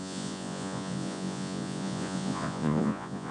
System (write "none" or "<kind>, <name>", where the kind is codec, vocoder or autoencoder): vocoder, Vocos